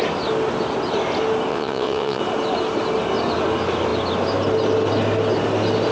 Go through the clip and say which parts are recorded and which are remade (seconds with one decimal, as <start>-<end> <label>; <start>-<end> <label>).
0.0-1.5 recorded; 1.5-2.2 remade; 2.2-5.9 recorded